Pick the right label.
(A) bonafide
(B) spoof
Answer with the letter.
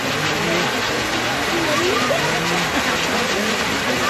A